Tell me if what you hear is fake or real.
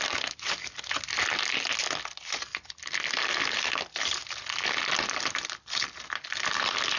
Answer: real